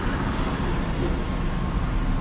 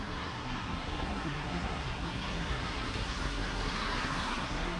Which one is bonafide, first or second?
first